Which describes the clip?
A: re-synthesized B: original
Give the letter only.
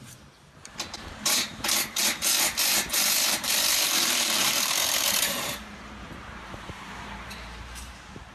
A